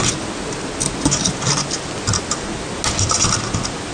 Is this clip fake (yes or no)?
no